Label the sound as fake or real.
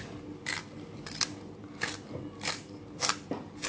real